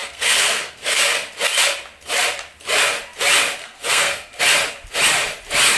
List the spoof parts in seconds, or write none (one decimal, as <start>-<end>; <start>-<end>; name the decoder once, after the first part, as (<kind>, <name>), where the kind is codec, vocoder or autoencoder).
0.0-1.0 (codec, SNAC); 3.6-4.4